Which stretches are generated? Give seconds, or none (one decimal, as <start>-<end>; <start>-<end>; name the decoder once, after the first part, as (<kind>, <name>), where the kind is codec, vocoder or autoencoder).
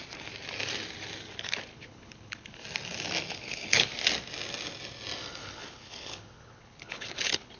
1.7-2.6 (codec, HILCodec); 3.3-3.9; 5.4-7.6